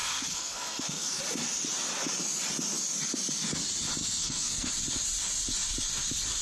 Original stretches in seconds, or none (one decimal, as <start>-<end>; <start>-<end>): 1.2-4.0; 4.7-6.4